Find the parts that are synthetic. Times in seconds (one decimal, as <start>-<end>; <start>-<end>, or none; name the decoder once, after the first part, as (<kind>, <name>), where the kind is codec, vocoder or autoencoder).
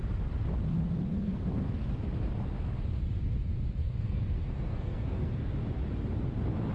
1.1-1.8 (codec, SNAC); 3.8-5.5